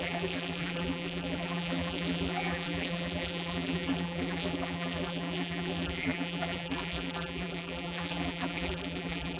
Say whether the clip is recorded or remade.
remade